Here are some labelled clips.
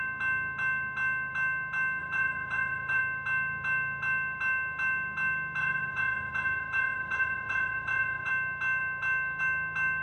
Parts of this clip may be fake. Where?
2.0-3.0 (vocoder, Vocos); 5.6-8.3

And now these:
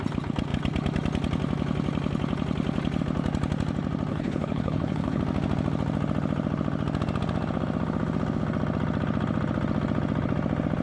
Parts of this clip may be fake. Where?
4.1-5.2 (codec, HILCodec)